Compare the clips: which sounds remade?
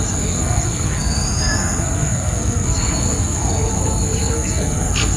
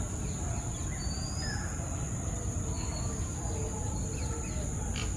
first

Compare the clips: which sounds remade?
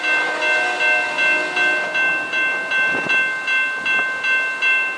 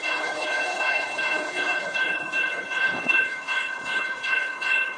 second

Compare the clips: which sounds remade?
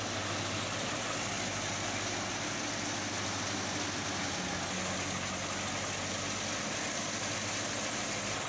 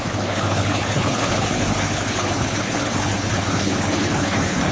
second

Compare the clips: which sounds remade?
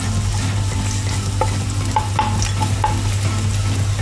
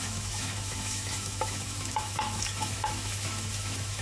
second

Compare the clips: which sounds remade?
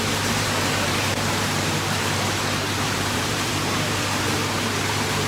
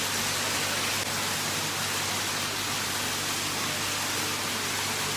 first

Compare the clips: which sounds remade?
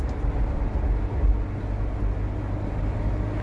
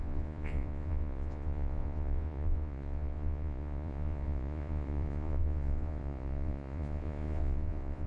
second